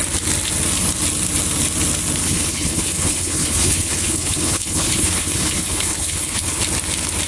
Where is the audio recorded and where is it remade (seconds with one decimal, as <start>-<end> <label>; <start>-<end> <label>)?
0.0-2.2 recorded; 2.2-6.6 remade; 6.6-7.3 recorded